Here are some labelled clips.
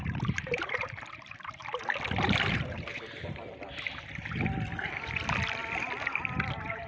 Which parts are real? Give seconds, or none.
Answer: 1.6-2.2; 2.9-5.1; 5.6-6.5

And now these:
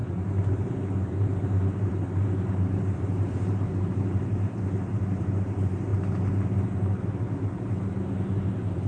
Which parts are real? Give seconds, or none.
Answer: 5.9-8.5